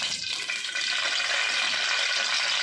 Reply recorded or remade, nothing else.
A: recorded